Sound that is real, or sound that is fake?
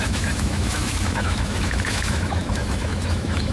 fake